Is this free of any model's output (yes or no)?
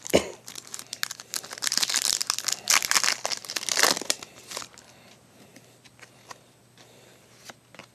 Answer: yes